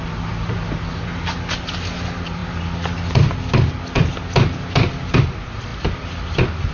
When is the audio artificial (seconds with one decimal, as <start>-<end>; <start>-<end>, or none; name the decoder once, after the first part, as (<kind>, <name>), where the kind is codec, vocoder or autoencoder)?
none